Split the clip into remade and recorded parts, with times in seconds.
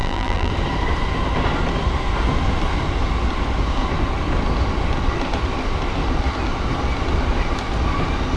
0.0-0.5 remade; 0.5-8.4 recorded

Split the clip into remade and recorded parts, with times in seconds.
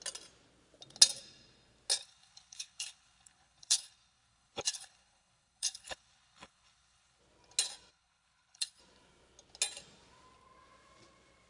0.0-2.0 recorded; 2.0-7.2 remade; 7.2-7.9 recorded; 7.9-8.8 remade; 8.8-11.5 recorded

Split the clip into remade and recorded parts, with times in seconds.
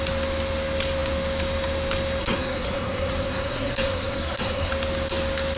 0.0-2.2 recorded; 2.2-4.7 remade; 4.7-5.6 recorded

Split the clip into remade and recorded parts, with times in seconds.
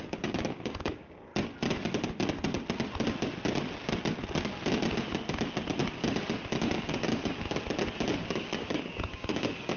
0.0-1.3 remade; 1.3-6.6 recorded; 6.6-7.1 remade; 7.1-8.2 recorded; 8.2-9.8 remade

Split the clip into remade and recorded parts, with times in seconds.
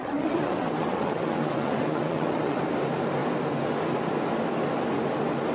0.0-2.6 remade; 2.6-5.5 recorded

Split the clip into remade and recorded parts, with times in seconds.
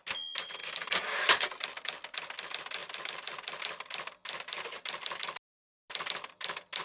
0.0-6.8 recorded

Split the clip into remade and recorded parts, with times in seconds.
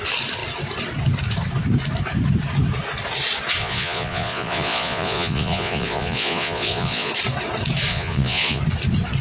0.0-3.6 recorded; 3.6-7.1 remade; 7.1-7.9 recorded; 7.9-8.6 remade; 8.6-9.2 recorded